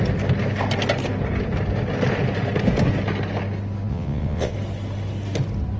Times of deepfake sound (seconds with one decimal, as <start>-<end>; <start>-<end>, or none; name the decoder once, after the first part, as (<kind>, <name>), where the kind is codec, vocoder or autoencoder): 3.9-4.5 (vocoder, WaveNeXt)